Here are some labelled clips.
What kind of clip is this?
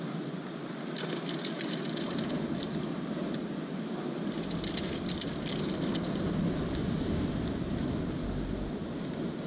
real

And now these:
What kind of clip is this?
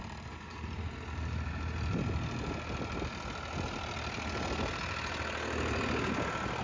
real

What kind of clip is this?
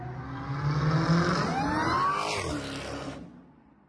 real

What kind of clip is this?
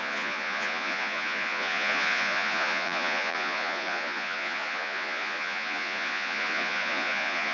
fake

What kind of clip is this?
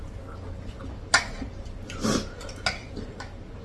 real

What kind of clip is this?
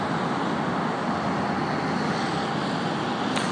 real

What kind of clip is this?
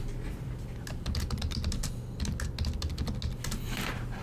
real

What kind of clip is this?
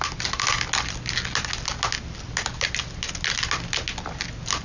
real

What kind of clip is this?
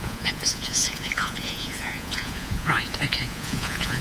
fake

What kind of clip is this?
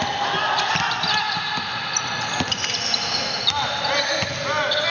real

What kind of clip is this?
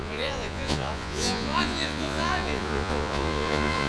fake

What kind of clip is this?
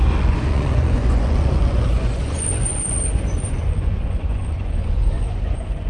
fake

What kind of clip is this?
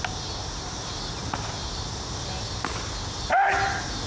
real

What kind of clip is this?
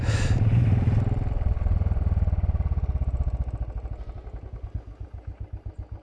real